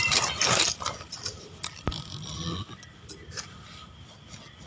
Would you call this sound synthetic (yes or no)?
no